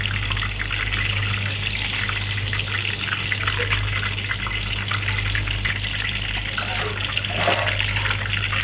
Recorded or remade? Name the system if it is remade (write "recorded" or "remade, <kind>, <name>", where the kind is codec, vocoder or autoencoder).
recorded